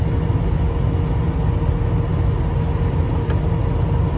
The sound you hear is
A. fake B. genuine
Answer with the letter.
B